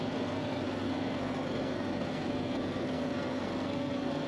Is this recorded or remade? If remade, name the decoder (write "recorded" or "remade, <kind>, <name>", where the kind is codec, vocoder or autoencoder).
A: remade, codec, SNAC